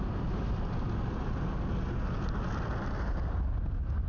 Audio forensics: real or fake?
real